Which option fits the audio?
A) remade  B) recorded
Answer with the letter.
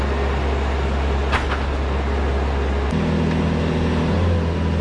B